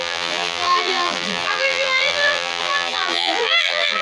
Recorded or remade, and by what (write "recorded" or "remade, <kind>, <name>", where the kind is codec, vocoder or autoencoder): remade, vocoder, BigVGAN v2